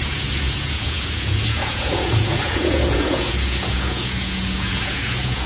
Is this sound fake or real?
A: fake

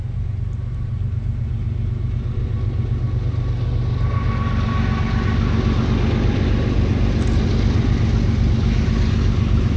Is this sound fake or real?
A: real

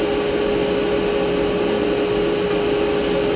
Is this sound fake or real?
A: real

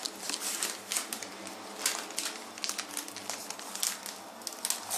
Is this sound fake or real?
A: real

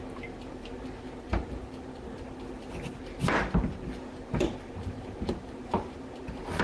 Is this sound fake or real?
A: real